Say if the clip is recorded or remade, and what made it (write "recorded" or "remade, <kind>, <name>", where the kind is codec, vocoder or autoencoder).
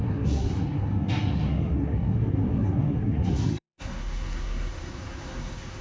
remade, codec, SNAC